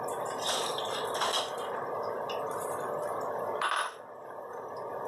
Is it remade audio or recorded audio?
remade